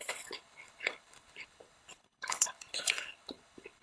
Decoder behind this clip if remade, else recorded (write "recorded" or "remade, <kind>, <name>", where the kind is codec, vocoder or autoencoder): remade, codec, HILCodec